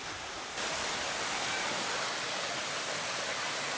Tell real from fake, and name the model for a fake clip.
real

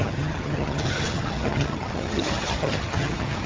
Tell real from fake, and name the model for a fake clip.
fake, vocoder, HiFi-GAN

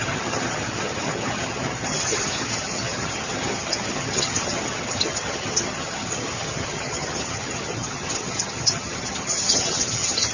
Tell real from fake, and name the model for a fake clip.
fake, vocoder, HiFi-GAN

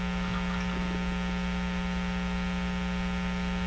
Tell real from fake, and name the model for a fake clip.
real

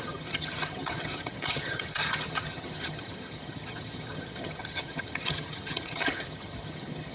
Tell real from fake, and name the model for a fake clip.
fake, vocoder, HiFi-GAN